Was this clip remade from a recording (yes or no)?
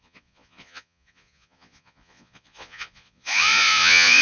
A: yes